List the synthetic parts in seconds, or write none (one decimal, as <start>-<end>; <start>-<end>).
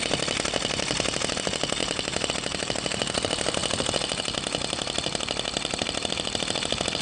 1.8-2.3